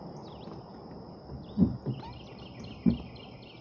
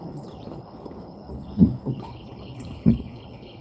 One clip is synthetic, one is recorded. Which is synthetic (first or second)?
second